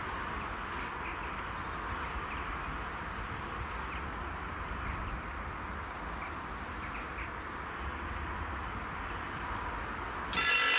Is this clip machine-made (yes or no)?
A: no